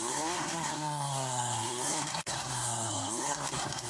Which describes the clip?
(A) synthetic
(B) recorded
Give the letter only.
A